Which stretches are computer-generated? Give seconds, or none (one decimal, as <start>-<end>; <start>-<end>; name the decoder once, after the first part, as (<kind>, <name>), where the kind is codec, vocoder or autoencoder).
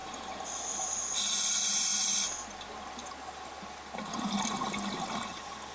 none